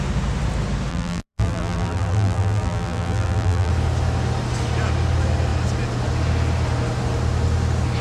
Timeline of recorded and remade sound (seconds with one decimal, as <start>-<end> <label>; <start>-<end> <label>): 0.0-0.9 recorded; 0.9-3.7 remade; 3.7-8.0 recorded